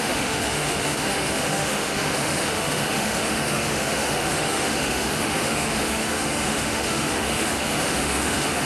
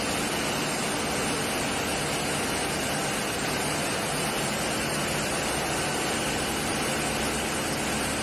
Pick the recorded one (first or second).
second